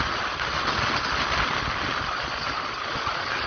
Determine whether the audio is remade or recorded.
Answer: recorded